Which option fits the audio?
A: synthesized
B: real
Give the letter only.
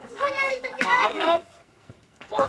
A